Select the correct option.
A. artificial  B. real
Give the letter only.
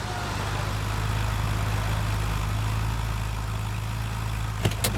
B